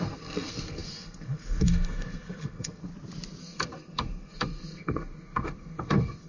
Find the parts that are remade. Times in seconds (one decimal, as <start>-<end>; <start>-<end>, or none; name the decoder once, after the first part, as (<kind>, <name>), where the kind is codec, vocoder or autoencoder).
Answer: 0.0-2.9 (codec, SNAC); 3.4-6.3